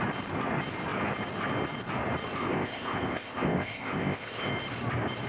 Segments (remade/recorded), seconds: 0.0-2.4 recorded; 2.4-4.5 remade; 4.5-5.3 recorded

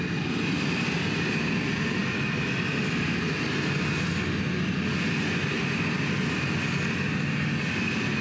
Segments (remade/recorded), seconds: 0.0-8.2 recorded

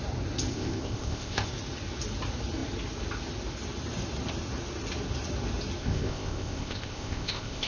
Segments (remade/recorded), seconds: 0.0-0.5 recorded; 0.5-1.5 remade; 1.5-5.8 recorded; 5.8-7.7 remade

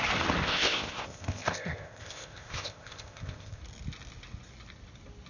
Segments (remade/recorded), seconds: 0.0-0.4 recorded; 0.4-3.6 remade; 3.6-5.3 recorded

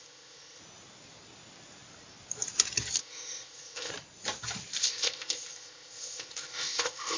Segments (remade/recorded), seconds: 0.0-0.6 remade; 0.6-3.0 recorded; 3.0-3.9 remade; 3.9-4.8 recorded; 4.8-7.2 remade

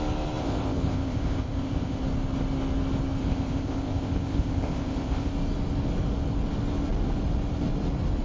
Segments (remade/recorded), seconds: 0.0-0.4 recorded; 0.4-2.0 remade; 2.0-3.2 recorded; 3.2-5.3 remade; 5.3-8.2 recorded

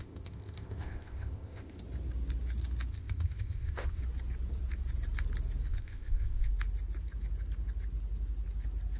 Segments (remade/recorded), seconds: 0.0-1.8 remade; 1.8-2.9 recorded; 2.9-4.0 remade; 4.0-5.7 recorded; 5.7-6.5 remade; 6.5-9.0 recorded